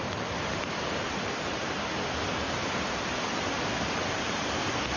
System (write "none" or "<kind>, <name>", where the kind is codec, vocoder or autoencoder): none